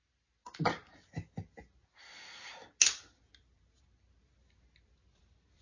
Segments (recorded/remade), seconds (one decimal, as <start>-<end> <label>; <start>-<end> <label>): 0.0-5.6 recorded